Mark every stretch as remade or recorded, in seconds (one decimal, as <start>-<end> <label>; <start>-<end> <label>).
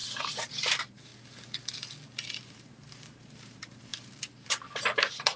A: 0.0-1.1 remade; 1.1-2.4 recorded; 2.4-5.4 remade